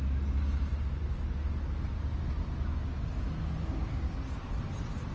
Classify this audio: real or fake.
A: real